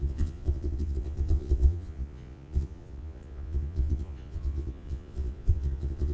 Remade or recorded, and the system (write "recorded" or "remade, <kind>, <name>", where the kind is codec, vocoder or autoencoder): remade, vocoder, Vocos